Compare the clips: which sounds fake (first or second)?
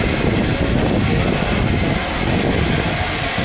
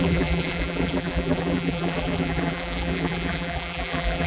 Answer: second